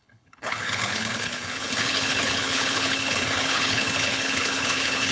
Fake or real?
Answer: fake